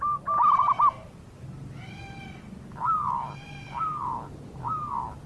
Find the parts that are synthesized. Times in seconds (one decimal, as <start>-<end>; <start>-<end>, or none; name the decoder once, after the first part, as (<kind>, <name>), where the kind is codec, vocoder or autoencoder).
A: none